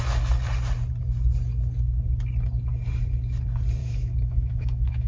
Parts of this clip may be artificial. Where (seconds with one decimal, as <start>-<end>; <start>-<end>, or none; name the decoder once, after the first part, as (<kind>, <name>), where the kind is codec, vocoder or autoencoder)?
3.8-5.1 (autoencoder, DAC-VAE)

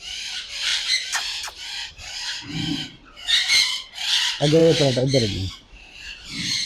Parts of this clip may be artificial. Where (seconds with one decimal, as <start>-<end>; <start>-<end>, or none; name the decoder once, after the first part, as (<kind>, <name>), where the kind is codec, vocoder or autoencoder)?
0.0-6.7 (vocoder, BigVGAN v2)

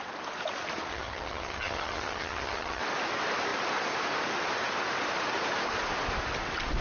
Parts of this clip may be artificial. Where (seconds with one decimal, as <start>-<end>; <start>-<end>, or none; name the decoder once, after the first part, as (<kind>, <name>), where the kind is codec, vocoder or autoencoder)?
0.9-2.8 (vocoder, HiFi-GAN)

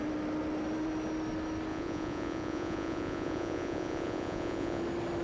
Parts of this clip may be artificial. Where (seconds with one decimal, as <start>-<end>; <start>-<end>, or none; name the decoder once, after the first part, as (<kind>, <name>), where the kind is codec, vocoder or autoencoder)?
1.7-4.8 (vocoder, Vocos)

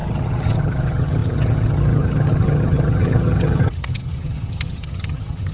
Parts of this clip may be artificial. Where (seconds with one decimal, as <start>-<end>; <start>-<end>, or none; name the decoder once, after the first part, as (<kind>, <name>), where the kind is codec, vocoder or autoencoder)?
0.0-5.5 (vocoder, HiFi-GAN)

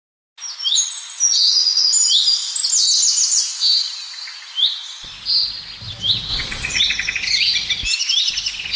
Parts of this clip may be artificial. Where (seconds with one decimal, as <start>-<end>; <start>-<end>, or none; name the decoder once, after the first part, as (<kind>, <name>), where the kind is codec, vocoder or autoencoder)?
6.3-6.8 (vocoder, Vocos)

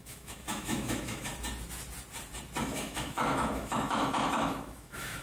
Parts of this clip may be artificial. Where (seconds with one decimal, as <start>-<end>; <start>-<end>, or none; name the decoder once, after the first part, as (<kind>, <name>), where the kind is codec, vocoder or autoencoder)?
0.0-1.3 (autoencoder, DAC-VAE); 2.6-5.2

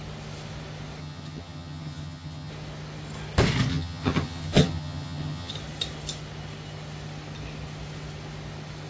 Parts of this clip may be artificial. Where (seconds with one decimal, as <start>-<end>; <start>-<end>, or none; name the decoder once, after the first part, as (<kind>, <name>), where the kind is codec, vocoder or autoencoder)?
1.0-2.5 (vocoder, HiFi-GAN); 3.7-5.5